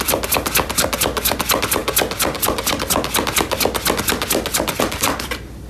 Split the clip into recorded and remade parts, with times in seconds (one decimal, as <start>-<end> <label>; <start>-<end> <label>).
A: 0.0-1.8 remade; 1.8-4.5 recorded; 4.5-5.7 remade

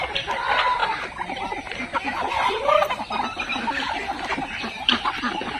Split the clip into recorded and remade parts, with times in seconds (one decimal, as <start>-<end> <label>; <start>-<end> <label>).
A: 0.0-3.5 recorded; 3.5-4.4 remade; 4.4-5.6 recorded

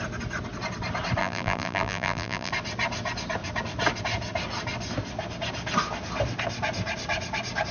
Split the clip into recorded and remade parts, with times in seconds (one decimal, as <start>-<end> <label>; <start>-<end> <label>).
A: 0.0-1.2 recorded; 1.2-2.5 remade; 2.5-7.7 recorded